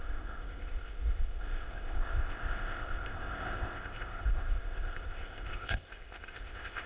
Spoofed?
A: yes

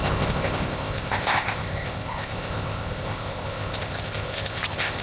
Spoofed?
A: yes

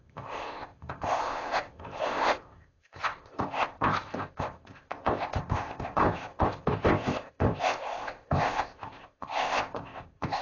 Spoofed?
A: yes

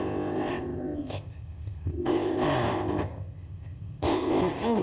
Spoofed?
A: yes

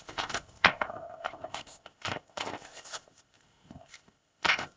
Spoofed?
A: yes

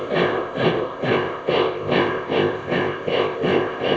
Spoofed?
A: yes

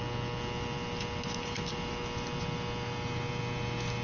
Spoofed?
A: no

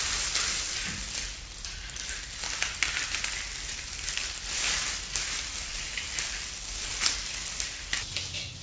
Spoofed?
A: no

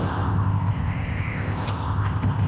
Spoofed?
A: yes